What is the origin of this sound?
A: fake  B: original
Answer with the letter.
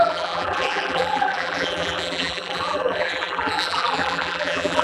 A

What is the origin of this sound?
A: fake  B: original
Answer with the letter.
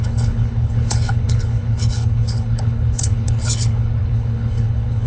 A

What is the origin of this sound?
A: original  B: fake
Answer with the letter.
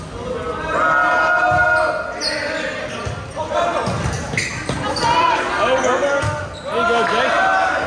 A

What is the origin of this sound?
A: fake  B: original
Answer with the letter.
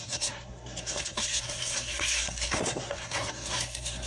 A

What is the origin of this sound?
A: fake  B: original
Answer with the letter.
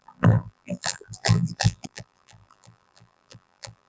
A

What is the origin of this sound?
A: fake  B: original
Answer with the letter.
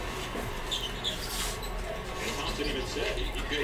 B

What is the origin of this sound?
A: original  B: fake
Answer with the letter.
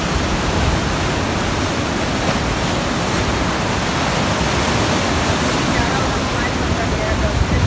A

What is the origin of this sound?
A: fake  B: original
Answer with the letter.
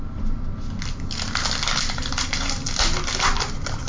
B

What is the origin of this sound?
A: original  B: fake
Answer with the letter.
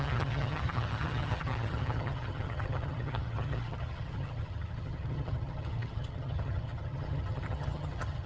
B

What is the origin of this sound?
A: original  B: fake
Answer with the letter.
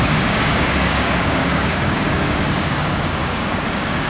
B